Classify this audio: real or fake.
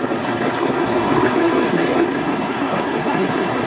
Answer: fake